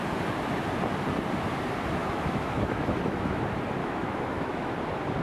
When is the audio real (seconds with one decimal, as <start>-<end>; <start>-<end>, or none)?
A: 0.0-2.0; 3.4-3.8; 4.7-5.2